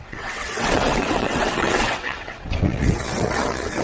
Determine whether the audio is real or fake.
fake